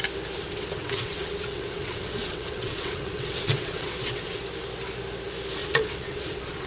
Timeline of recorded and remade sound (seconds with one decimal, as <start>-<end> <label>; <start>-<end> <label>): 0.0-0.4 recorded; 0.4-4.4 remade; 4.4-5.6 recorded; 5.6-6.7 remade